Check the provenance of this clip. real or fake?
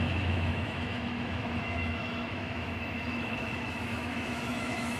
fake